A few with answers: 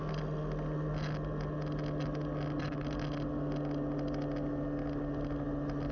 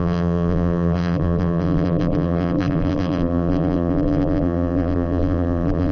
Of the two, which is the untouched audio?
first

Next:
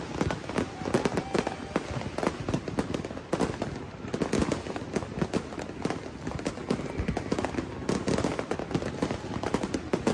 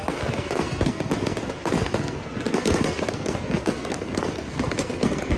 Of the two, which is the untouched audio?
first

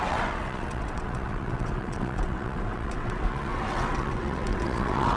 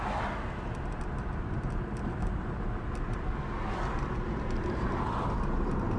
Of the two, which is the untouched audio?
second